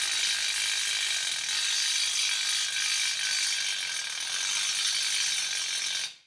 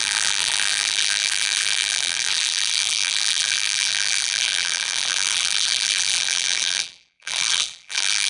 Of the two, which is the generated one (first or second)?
second